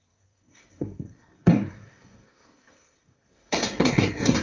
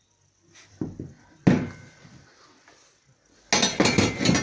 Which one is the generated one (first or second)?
first